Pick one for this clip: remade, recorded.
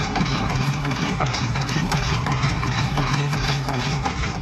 remade